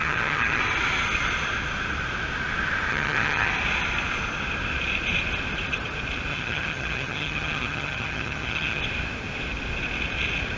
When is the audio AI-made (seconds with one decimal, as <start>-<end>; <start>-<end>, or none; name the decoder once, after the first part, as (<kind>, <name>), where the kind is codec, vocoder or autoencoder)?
0.0-0.6 (vocoder, HiFi-GAN); 2.9-3.5; 6.3-8.8